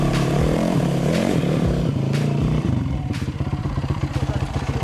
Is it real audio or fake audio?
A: fake